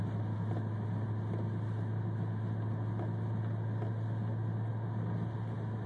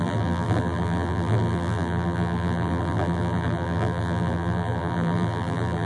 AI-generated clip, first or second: second